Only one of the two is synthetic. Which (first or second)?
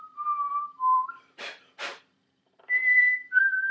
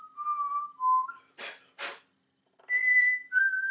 first